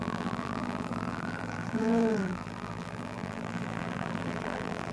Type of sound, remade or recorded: remade